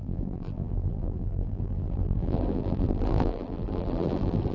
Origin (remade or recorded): remade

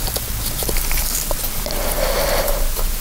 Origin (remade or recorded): recorded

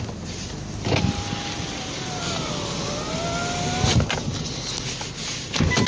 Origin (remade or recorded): recorded